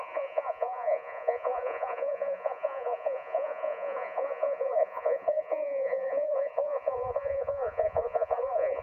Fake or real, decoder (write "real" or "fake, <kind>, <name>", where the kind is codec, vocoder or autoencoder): fake, vocoder, Vocos